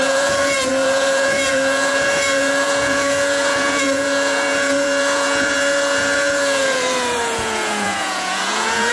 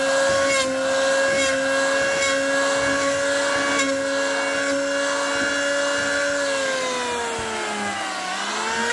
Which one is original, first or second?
second